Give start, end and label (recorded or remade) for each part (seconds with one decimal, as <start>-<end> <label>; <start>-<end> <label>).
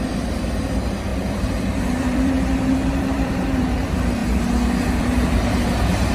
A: 0.0-4.2 remade; 4.2-5.0 recorded; 5.0-6.1 remade